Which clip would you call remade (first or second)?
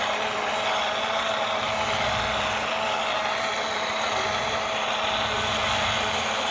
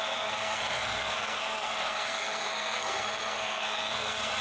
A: second